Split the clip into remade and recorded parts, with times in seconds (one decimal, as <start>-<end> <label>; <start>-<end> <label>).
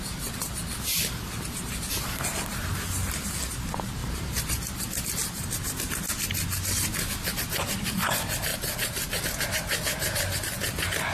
0.0-4.0 recorded; 4.0-4.6 remade; 4.6-8.5 recorded; 8.5-9.2 remade; 9.2-11.1 recorded